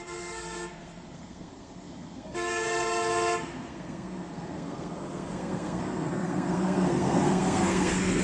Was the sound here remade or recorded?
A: remade